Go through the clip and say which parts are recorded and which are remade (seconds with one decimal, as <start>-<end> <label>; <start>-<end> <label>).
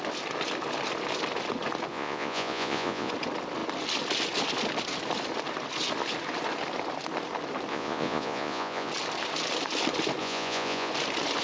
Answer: 0.0-1.9 recorded; 1.9-3.1 remade; 3.1-7.7 recorded; 7.7-8.9 remade; 8.9-10.2 recorded; 10.2-10.9 remade; 10.9-11.4 recorded